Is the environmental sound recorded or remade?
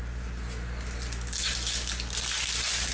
recorded